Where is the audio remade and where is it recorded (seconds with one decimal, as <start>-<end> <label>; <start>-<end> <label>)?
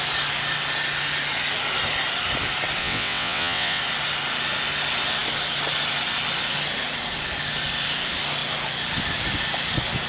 0.0-2.8 recorded; 2.8-3.8 remade; 3.8-10.1 recorded